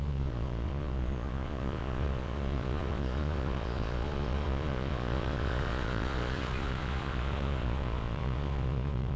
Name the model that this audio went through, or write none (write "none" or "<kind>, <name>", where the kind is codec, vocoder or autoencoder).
vocoder, Vocos